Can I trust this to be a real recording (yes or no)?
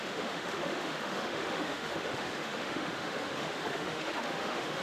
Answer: no